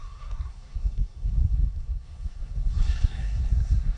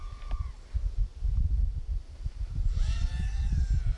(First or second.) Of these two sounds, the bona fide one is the second